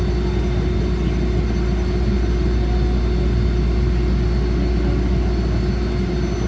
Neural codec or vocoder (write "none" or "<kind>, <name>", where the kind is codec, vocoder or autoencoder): none